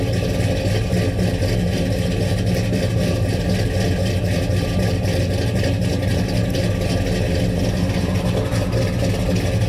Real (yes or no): yes